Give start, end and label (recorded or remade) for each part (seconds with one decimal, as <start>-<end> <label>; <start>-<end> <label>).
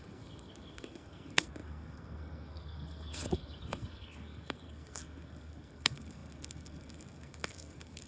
0.0-8.1 remade